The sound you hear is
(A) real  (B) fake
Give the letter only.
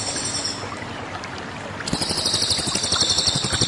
A